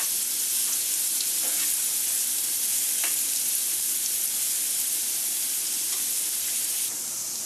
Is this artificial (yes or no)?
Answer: no